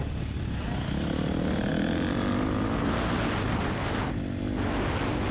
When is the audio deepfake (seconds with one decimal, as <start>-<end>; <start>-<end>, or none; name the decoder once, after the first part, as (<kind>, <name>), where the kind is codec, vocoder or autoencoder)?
none